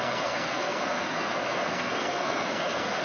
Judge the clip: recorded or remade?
remade